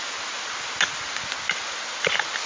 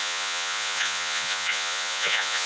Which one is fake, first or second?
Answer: second